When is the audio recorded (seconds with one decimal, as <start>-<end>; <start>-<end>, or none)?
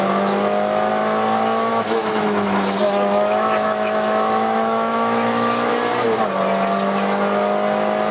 0.9-1.7; 5.7-8.1